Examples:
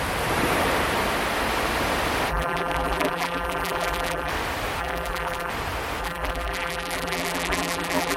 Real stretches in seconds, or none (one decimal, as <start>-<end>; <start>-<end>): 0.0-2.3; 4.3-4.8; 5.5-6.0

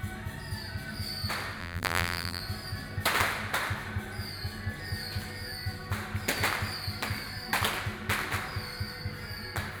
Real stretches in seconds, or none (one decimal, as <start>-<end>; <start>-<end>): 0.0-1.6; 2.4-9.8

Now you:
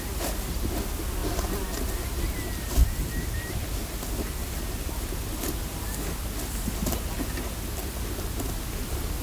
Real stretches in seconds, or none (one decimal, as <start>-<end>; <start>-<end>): 0.0-2.8; 3.5-9.2

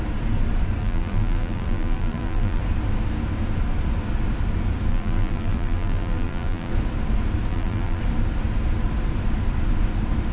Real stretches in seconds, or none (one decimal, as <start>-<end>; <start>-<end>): 0.0-0.8; 2.6-4.9; 6.7-7.5; 8.0-10.3